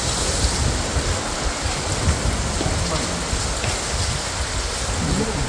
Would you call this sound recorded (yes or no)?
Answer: yes